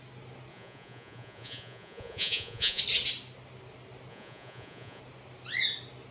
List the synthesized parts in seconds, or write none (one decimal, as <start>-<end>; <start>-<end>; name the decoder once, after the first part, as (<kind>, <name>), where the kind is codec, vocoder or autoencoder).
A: 0.5-2.8 (vocoder, Vocos); 4.1-5.0